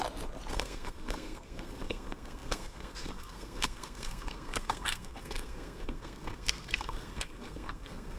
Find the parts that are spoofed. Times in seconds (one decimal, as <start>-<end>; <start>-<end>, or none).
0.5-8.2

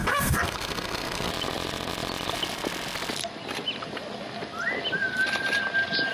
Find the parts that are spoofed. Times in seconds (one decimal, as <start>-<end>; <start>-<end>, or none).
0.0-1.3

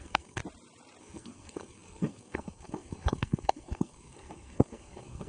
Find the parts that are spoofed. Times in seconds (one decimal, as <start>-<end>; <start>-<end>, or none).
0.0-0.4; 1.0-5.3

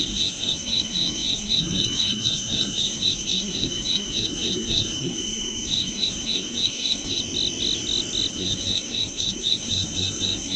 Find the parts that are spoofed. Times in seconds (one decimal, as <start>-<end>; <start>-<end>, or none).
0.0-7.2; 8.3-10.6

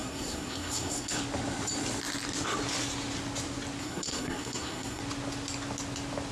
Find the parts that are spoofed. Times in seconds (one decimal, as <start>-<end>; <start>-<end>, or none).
0.0-1.2; 3.8-5.0

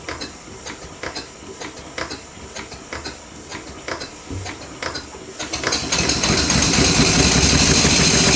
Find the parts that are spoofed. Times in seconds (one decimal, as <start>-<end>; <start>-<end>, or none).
none